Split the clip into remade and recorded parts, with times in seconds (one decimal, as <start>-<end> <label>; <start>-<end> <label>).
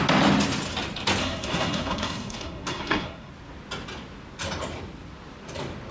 0.0-1.2 recorded; 1.2-3.3 remade; 3.3-5.9 recorded